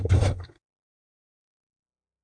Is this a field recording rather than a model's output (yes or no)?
no